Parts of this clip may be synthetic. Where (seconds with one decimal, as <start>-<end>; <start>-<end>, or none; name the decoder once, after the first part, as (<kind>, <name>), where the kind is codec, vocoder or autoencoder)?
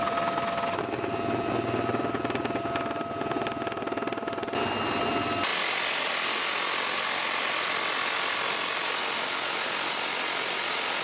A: none